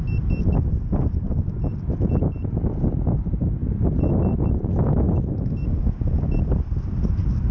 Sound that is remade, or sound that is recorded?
recorded